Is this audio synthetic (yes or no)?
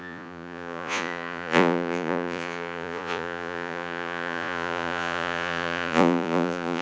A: yes